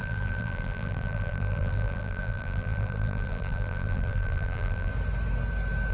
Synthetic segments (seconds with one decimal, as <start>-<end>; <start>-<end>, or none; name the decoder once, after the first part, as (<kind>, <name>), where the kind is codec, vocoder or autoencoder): 0.0-4.9 (vocoder, BigVGAN v2)